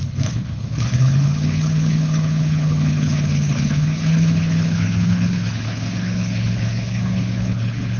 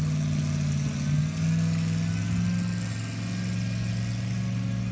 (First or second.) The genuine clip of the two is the second